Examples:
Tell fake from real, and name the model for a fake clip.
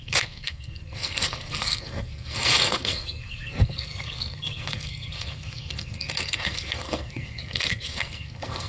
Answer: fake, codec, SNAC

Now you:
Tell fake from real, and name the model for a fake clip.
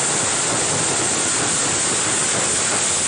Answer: real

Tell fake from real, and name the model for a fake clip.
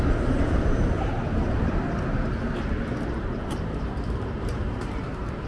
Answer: fake, vocoder, BigVGAN v2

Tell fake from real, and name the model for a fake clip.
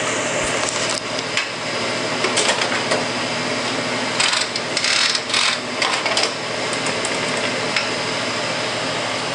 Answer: real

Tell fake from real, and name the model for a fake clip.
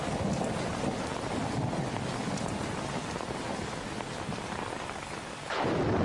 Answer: real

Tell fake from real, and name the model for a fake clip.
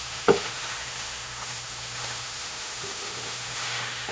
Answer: fake, autoencoder, DAC-VAE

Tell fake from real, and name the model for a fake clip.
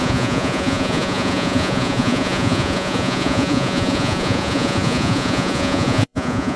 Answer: fake, vocoder, Vocos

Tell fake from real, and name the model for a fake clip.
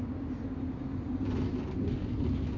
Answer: real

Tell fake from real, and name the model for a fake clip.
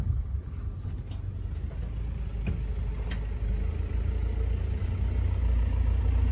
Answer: real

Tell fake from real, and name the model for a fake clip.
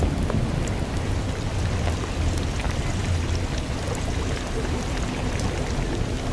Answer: real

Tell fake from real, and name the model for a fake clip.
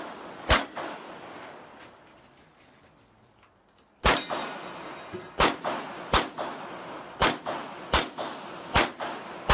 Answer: real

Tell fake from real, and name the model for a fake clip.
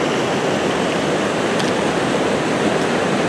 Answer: real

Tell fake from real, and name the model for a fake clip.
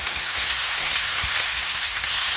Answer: fake, codec, SNAC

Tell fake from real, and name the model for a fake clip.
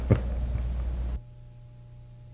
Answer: real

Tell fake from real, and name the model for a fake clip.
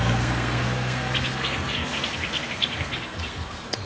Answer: fake, codec, SNAC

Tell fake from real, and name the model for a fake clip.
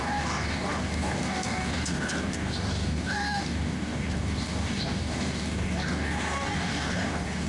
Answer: fake, codec, DAC